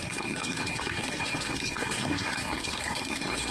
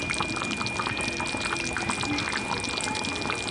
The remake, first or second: first